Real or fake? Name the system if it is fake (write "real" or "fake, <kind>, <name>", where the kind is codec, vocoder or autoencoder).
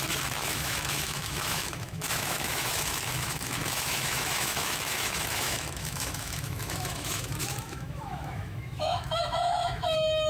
fake, autoencoder, DAC-VAE